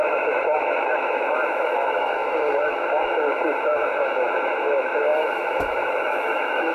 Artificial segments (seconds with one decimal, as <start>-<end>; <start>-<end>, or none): 0.0-6.7